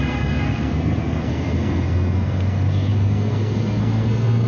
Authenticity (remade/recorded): remade